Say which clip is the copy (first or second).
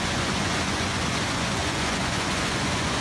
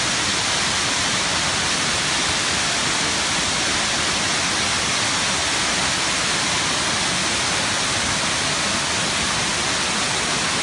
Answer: first